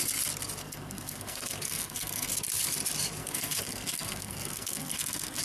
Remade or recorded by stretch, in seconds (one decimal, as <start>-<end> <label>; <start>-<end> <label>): 0.0-0.6 recorded; 0.6-2.3 remade; 2.3-3.2 recorded; 3.2-5.4 remade